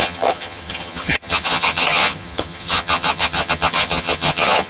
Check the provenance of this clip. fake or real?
fake